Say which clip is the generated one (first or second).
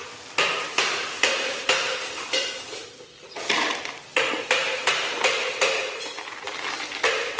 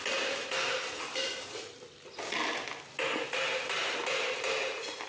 first